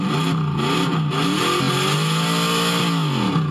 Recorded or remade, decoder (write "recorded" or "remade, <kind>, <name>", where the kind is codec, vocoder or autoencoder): recorded